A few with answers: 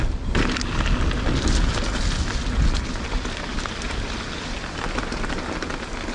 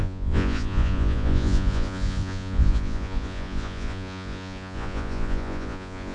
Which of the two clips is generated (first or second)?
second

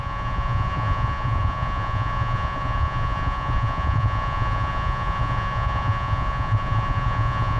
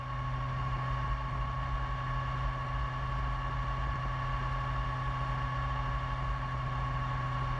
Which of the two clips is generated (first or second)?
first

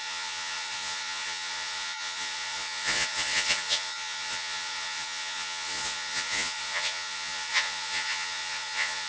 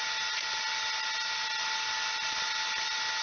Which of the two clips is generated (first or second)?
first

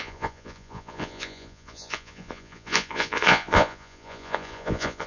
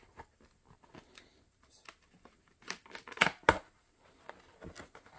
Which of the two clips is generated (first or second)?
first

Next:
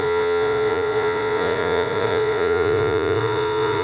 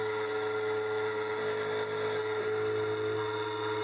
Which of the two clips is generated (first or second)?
first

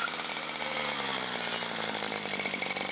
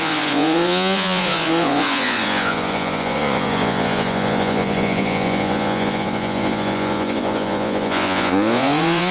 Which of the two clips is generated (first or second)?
second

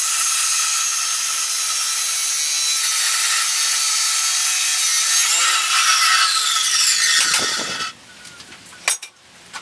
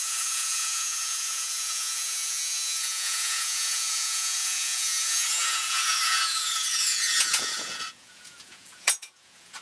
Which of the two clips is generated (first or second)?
second